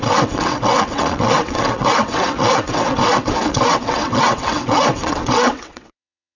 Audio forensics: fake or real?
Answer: fake